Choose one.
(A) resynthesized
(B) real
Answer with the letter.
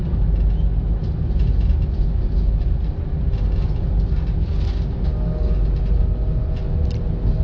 B